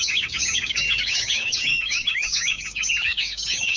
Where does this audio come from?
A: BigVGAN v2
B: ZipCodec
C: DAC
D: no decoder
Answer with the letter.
C